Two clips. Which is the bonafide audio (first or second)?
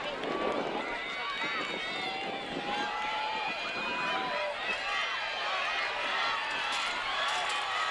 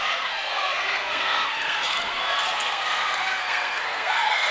first